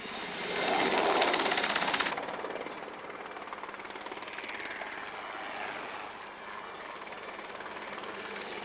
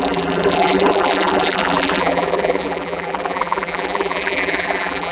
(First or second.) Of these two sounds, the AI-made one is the second